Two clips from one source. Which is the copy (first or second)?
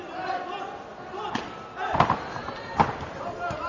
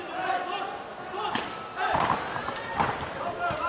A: second